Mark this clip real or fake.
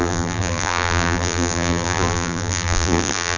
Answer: fake